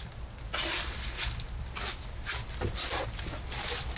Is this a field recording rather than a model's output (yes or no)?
yes